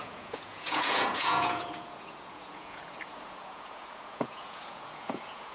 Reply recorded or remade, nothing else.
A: remade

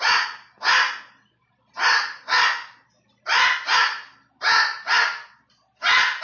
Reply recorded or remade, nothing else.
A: recorded